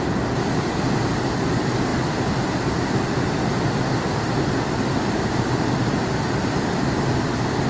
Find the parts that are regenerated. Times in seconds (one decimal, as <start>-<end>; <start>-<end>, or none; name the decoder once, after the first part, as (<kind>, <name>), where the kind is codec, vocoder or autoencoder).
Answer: none